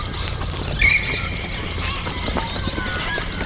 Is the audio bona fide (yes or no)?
yes